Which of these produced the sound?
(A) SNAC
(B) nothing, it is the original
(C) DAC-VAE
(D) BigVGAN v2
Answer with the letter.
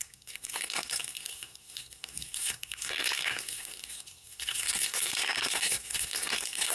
A